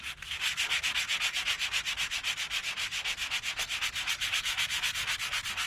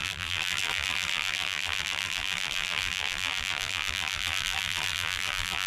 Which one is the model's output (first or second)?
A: second